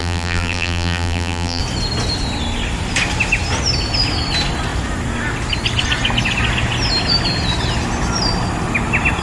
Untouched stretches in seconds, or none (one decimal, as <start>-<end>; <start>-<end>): 1.6-9.2